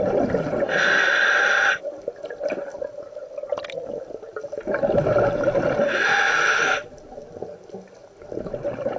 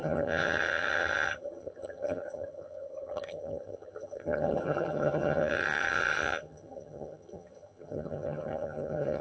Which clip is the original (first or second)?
first